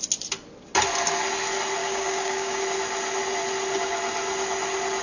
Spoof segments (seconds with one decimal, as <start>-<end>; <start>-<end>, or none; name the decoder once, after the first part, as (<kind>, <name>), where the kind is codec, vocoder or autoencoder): 1.8-2.6 (codec, DAC)